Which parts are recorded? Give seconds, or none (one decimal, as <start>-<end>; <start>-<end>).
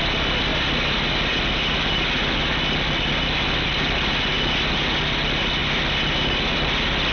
0.0-7.1